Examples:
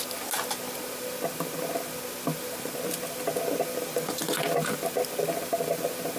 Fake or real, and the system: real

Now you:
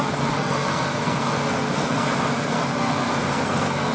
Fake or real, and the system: fake, codec, SNAC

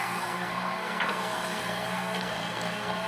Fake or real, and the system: fake, codec, SNAC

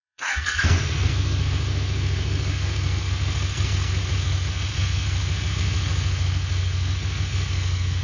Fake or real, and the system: fake, codec, SNAC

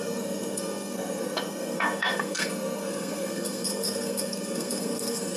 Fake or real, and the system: fake, codec, SNAC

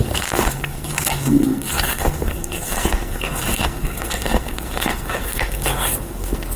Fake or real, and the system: fake, codec, SNAC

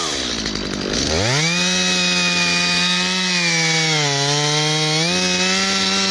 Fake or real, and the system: real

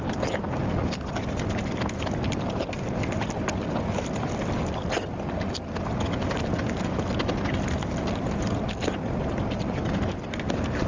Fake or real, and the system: real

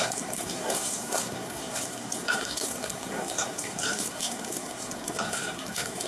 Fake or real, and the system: fake, codec, SNAC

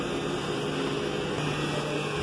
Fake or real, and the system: real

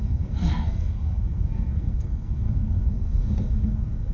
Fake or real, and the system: fake, codec, SNAC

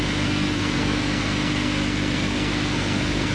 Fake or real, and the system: fake, codec, SNAC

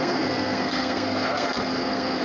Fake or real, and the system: fake, codec, SNAC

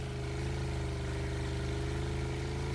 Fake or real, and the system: real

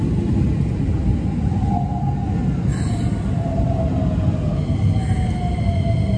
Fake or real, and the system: real